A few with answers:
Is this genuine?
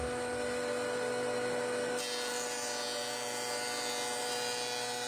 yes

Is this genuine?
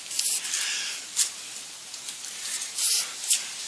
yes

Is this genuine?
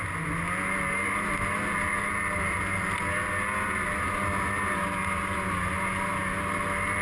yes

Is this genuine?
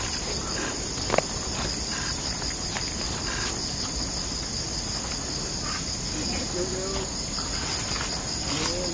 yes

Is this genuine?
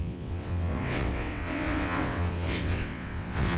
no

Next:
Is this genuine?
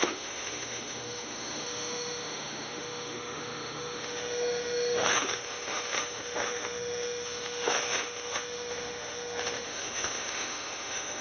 no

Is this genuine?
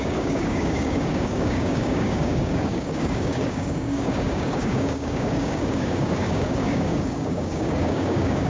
no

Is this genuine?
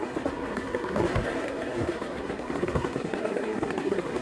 no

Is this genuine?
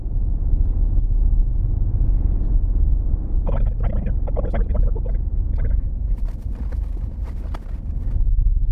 yes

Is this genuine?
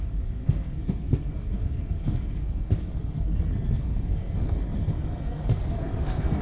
no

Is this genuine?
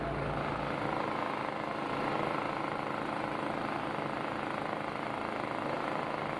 yes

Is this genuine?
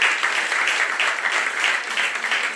no